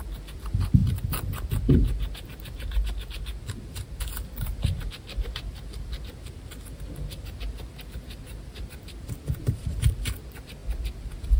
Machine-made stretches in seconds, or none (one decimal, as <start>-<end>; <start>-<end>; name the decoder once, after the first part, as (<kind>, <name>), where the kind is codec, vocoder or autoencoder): none